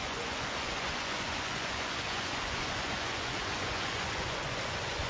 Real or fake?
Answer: fake